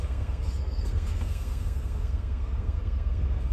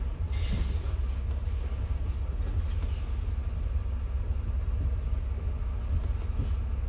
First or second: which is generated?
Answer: first